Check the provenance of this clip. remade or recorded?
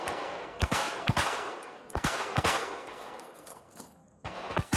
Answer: remade